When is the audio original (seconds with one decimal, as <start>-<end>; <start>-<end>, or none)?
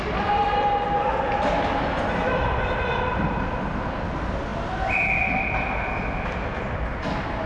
0.0-7.5